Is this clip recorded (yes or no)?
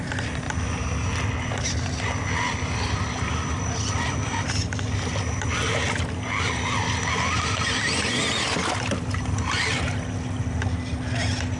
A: yes